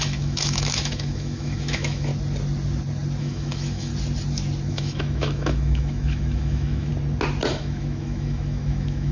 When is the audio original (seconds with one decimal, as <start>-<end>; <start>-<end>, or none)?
2.1-3.2; 3.9-4.7; 6.9-7.5